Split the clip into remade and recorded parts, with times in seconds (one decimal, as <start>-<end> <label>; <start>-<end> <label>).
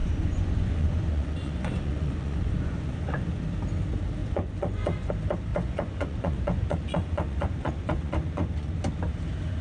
0.0-3.4 remade; 3.4-4.2 recorded; 4.2-5.1 remade; 5.1-5.5 recorded; 5.5-8.7 remade; 8.7-9.6 recorded